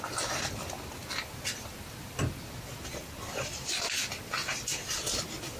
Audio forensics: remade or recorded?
recorded